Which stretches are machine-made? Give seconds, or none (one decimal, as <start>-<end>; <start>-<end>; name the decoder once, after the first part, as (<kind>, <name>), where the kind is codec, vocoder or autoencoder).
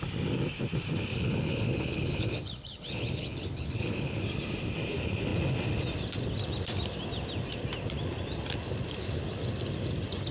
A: 1.1-4.2 (codec, HILCodec)